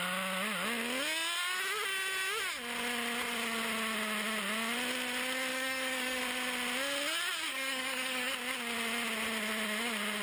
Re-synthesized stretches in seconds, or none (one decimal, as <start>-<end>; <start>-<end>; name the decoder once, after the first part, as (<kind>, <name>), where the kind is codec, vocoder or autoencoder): 5.5-6.2 (codec, DAC); 7.5-8.3